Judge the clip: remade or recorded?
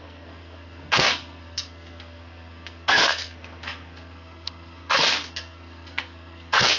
remade